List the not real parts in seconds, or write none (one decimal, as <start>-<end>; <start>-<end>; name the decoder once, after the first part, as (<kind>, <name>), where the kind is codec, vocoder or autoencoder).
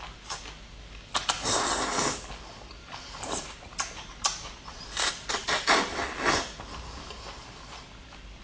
2.8-5.1 (vocoder, BigVGAN v2)